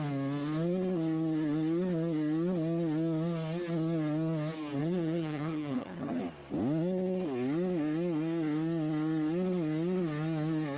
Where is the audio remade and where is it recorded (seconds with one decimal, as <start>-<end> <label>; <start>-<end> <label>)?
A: 0.0-4.8 recorded; 4.8-6.2 remade; 6.2-10.8 recorded